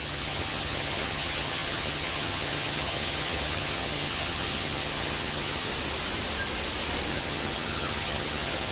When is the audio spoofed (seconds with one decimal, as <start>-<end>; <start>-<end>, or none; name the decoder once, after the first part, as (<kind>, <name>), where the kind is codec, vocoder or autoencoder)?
0.0-5.7 (vocoder, HiFi-GAN); 7.1-8.7